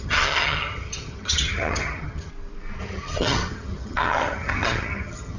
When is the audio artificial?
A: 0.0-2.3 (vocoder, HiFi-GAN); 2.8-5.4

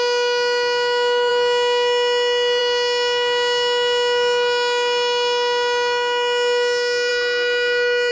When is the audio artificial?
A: 7.1-8.1 (autoencoder, DAC-VAE)

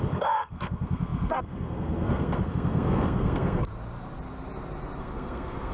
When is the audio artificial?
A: 0.0-3.7 (codec, SNAC); 5.0-5.7

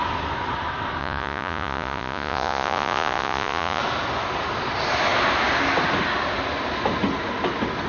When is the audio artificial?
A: 1.0-3.8 (vocoder, Vocos)

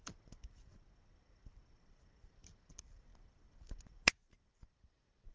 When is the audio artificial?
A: none

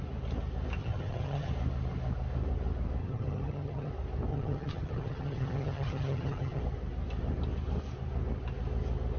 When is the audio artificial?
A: 0.8-1.5 (vocoder, HiFi-GAN); 3.0-3.9; 4.3-6.6